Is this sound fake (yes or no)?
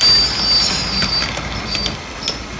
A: no